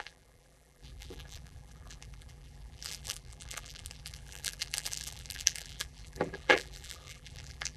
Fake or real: fake